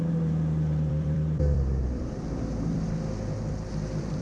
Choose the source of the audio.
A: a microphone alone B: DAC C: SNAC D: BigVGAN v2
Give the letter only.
D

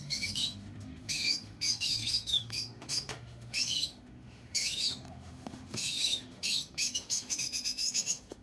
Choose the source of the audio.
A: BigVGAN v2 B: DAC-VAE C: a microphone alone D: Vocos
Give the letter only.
B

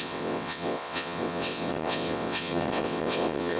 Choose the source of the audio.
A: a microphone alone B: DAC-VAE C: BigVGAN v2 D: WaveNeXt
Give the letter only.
D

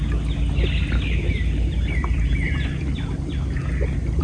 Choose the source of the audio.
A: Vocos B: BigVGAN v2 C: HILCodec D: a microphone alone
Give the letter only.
D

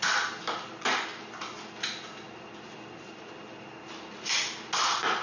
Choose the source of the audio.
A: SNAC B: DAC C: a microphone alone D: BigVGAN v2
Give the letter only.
C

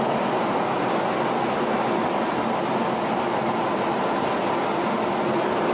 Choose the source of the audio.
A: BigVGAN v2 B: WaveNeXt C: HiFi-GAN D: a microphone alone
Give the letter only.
D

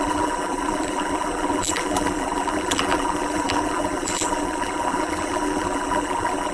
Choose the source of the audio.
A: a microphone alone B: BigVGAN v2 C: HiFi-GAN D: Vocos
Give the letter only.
B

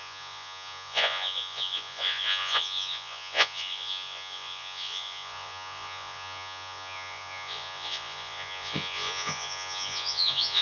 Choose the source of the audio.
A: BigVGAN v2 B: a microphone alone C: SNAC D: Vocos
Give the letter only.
D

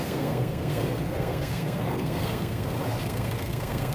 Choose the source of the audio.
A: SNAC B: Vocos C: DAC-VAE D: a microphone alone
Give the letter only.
A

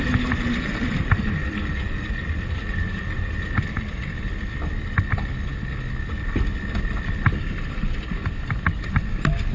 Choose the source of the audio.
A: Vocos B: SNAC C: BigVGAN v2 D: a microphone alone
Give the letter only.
C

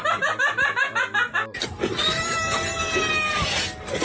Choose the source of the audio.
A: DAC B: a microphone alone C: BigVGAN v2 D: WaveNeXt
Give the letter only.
B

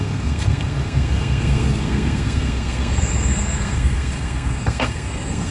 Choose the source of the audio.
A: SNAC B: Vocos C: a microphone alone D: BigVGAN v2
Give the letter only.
A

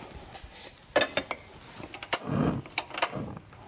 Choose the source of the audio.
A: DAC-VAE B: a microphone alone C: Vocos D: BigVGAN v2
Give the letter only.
B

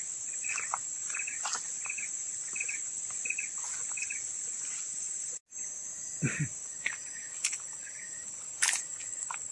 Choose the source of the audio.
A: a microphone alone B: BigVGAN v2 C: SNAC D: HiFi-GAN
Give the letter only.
A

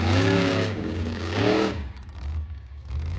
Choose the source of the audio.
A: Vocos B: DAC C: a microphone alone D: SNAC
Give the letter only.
B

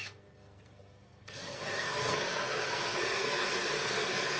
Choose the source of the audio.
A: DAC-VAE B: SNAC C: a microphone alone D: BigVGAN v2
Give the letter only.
B